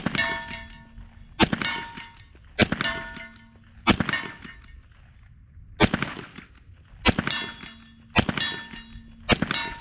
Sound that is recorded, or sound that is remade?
recorded